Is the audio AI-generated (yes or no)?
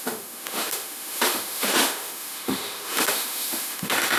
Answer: yes